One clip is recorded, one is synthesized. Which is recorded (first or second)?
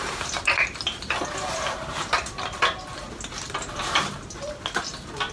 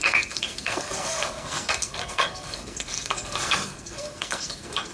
first